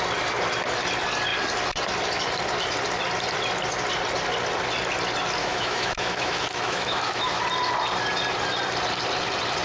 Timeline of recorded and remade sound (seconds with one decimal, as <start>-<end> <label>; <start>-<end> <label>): 0.0-5.4 recorded; 5.4-7.4 remade; 7.4-9.6 recorded